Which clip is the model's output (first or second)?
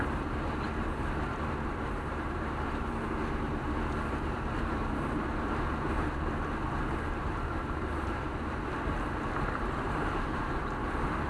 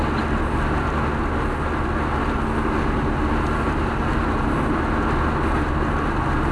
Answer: first